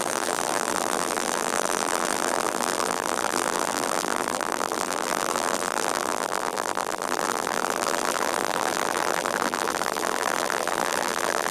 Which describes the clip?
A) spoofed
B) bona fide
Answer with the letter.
A